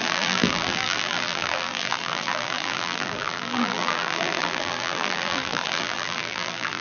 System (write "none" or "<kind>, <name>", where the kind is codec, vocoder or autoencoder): vocoder, BigVGAN v2